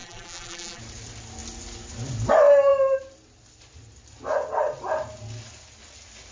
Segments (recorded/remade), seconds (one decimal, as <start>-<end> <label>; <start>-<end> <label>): 0.0-0.8 remade; 0.8-6.3 recorded